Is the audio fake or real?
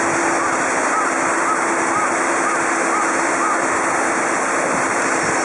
real